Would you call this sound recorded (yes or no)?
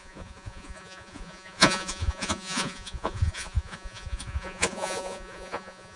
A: no